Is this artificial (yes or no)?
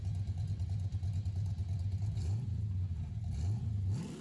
no